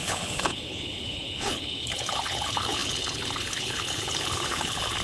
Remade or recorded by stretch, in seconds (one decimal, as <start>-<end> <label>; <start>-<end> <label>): 0.0-5.0 remade